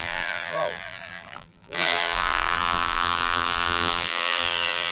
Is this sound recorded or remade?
remade